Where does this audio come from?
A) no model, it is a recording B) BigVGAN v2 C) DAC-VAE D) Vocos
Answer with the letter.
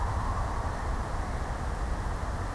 A